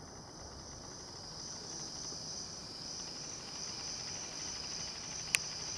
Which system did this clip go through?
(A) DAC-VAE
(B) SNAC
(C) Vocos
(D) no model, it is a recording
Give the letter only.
D